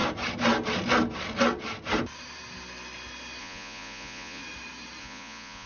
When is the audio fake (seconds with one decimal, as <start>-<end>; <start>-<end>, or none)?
3.4-4.4; 5.0-5.7